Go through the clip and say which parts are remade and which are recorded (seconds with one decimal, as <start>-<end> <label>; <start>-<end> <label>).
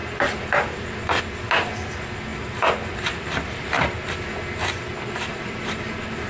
0.0-1.2 remade; 1.2-2.3 recorded; 2.3-4.1 remade; 4.1-5.3 recorded; 5.3-6.3 remade